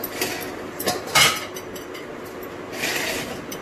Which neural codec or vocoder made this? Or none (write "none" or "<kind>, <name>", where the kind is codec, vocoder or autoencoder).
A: none